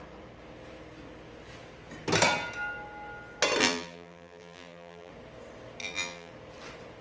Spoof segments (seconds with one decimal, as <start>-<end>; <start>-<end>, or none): 3.6-5.1; 5.8-6.3